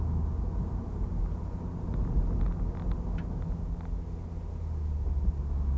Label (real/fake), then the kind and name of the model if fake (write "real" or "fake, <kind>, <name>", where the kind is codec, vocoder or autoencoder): real